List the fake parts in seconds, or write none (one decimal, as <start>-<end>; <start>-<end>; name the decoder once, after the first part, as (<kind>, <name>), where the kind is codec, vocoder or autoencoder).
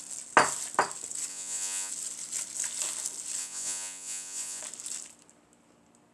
1.3-1.9 (vocoder, Vocos); 3.4-4.6